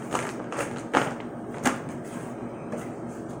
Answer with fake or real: real